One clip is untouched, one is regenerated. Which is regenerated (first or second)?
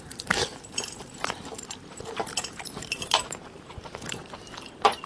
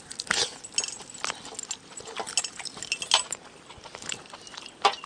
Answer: first